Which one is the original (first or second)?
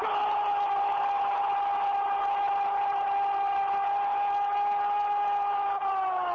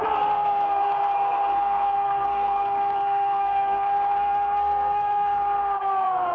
first